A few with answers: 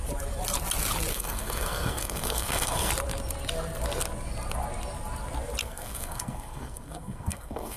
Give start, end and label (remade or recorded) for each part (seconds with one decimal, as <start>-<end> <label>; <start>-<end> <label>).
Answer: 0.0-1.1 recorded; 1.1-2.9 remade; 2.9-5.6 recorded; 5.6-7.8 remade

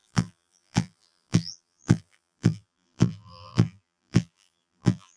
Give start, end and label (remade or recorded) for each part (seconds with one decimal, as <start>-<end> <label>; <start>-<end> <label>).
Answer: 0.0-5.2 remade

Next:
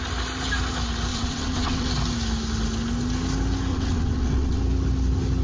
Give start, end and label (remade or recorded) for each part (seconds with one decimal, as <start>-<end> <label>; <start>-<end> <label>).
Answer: 0.0-1.1 recorded; 1.1-1.9 remade; 1.9-3.7 recorded; 3.7-4.6 remade; 4.6-5.4 recorded

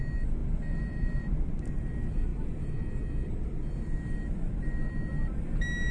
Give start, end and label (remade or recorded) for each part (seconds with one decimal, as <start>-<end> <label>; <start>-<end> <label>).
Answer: 0.0-0.4 recorded; 0.4-1.7 remade; 1.7-5.9 recorded

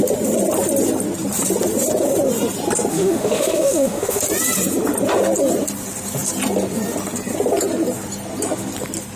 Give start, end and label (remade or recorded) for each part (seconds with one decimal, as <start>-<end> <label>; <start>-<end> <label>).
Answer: 0.0-2.9 recorded; 2.9-4.2 remade; 4.2-9.2 recorded